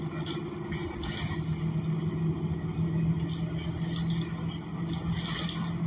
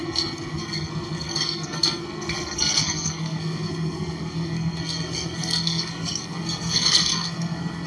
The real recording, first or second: first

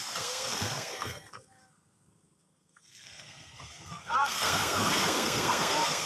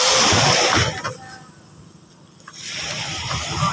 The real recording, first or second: second